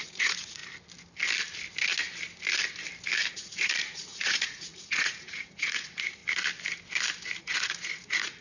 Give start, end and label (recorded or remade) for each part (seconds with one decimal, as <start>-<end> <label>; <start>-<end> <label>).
0.0-0.6 remade; 0.6-3.3 recorded; 3.3-6.2 remade; 6.2-7.4 recorded; 7.4-8.4 remade